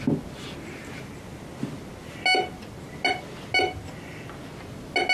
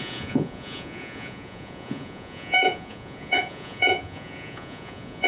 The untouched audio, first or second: first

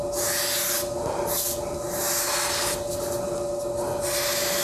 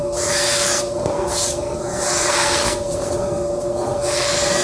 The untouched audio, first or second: first